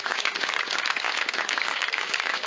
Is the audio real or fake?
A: fake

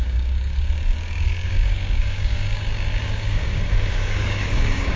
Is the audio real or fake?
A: fake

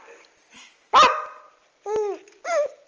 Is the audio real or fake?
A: real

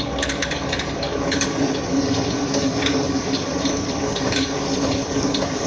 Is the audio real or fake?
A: fake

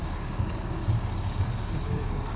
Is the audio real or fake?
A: fake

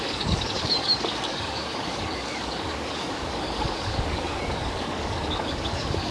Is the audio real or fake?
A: fake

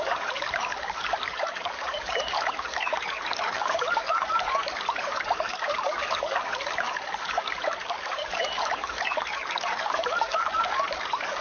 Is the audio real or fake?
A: fake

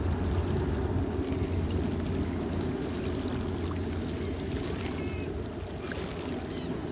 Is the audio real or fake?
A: real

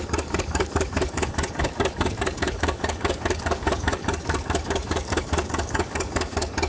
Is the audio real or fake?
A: fake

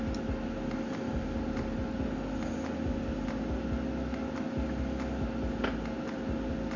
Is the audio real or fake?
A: real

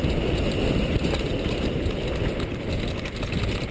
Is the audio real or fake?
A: real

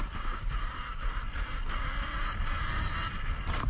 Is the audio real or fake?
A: real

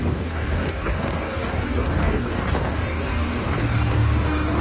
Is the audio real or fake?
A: fake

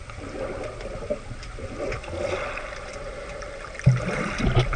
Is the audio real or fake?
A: real